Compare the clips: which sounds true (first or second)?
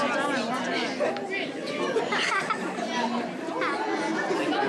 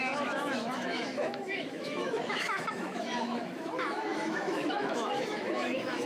first